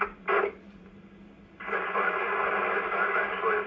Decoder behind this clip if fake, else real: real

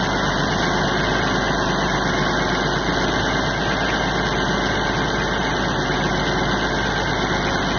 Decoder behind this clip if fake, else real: real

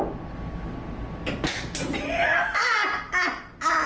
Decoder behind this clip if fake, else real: real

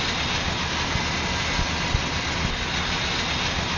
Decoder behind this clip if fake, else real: real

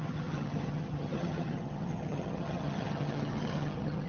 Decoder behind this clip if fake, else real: fake, vocoder, HiFi-GAN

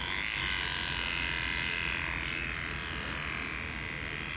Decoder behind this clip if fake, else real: real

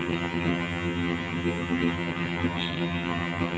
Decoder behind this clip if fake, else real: fake, vocoder, HiFi-GAN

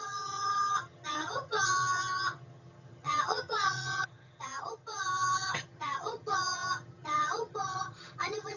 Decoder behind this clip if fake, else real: fake, vocoder, HiFi-GAN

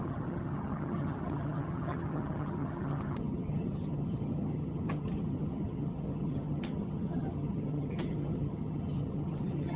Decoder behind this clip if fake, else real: fake, vocoder, HiFi-GAN